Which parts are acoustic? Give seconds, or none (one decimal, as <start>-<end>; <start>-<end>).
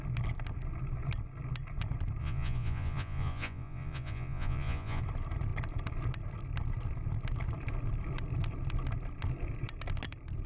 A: 0.0-2.2; 5.0-10.5